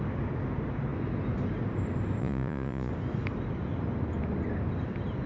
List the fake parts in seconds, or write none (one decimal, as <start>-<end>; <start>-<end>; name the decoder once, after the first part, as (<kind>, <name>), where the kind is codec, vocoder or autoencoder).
2.2-2.9 (vocoder, Vocos)